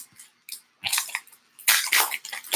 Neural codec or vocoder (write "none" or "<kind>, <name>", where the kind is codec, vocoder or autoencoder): none